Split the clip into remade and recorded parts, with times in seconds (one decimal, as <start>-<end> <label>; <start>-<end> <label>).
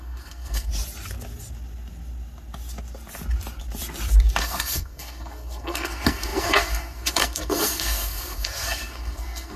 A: 0.0-0.7 remade; 0.7-4.4 recorded; 4.4-9.6 remade